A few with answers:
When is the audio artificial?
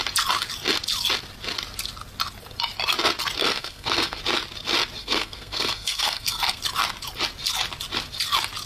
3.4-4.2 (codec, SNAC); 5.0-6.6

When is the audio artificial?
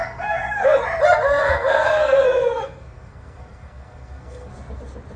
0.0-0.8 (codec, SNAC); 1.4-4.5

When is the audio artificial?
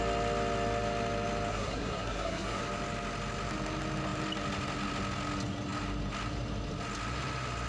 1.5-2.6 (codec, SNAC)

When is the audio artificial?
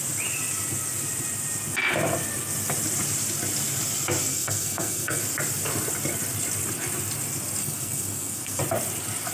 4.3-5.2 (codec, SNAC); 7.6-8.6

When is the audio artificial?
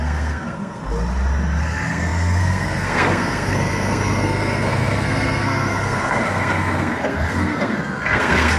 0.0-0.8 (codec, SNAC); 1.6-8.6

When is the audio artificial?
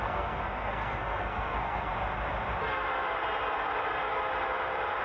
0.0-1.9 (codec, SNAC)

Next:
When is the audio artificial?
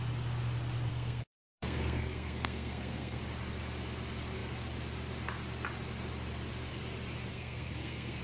0.9-3.2 (codec, SNAC); 7.3-8.2